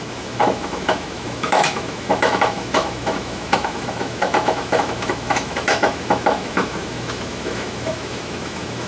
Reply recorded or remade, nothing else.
remade